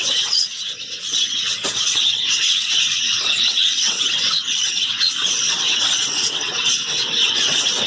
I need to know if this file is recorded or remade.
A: remade